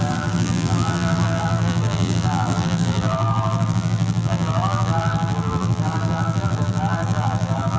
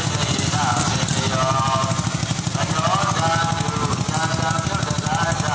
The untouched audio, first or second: second